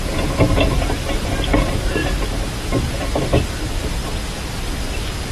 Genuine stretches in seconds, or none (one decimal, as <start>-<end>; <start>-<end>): 0.0-0.7; 1.3-5.3